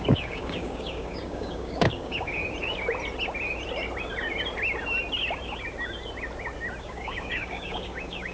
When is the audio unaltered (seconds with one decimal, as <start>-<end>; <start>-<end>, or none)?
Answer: 2.4-6.8